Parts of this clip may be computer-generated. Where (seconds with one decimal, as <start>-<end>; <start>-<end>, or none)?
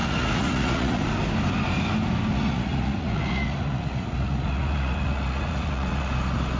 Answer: 0.0-1.0; 2.3-6.1